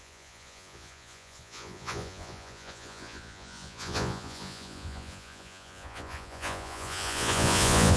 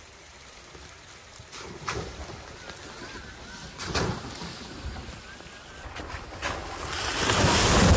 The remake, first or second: first